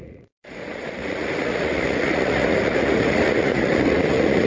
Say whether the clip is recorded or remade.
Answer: remade